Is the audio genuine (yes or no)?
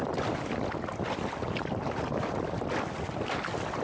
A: yes